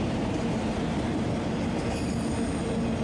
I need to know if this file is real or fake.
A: real